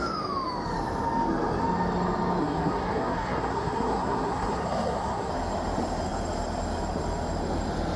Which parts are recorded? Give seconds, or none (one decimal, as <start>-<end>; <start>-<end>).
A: 0.0-2.4; 5.3-8.0